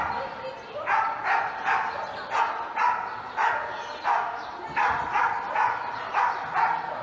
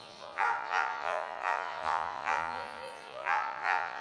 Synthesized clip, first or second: second